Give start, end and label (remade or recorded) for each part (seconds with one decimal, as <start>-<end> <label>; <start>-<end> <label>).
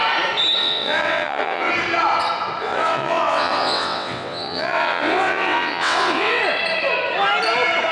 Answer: 0.0-0.6 recorded; 0.6-1.7 remade; 1.7-2.6 recorded; 2.6-6.4 remade; 6.4-7.9 recorded